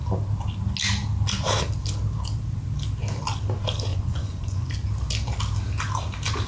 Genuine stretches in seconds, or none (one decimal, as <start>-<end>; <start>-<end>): 0.0-3.9; 4.7-6.5